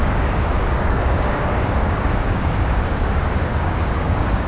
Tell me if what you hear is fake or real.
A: fake